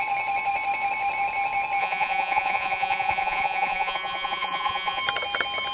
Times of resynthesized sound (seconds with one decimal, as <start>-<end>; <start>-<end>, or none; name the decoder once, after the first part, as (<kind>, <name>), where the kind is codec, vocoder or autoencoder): 1.8-5.0 (vocoder, Vocos)